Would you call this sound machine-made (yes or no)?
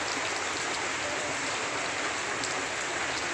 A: no